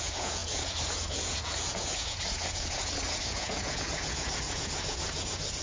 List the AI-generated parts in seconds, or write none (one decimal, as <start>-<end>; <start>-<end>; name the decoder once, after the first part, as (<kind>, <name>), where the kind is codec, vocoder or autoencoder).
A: 0.0-5.6 (vocoder, Vocos)